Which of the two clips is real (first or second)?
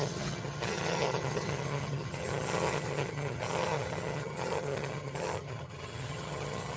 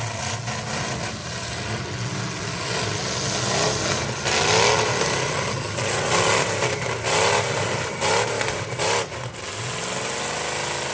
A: second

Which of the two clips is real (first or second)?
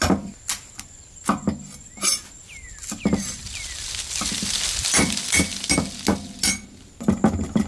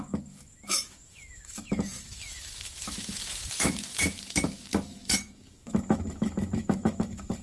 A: first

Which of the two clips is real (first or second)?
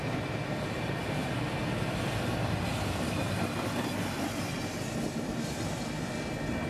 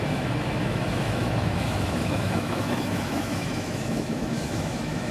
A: first